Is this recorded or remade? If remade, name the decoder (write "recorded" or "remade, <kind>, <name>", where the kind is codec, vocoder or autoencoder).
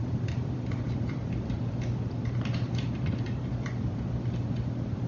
remade, vocoder, BigVGAN v2